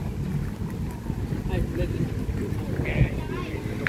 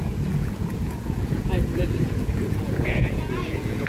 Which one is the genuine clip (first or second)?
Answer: first